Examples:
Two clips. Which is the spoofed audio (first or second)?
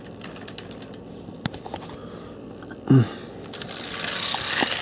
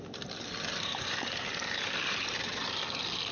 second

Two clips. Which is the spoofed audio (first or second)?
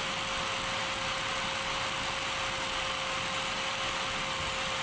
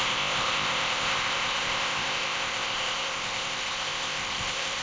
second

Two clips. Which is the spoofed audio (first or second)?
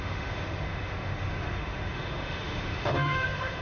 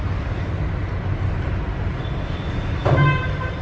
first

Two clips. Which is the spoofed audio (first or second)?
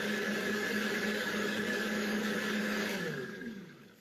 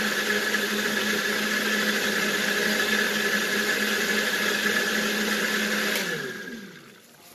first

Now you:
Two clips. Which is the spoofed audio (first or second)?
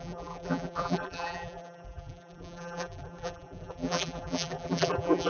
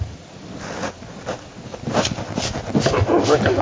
first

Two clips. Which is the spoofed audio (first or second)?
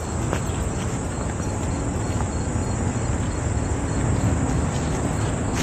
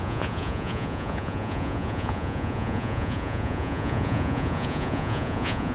second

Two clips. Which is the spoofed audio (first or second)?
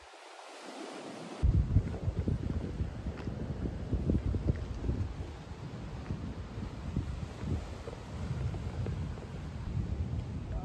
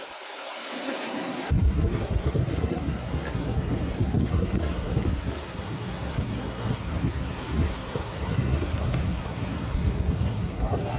second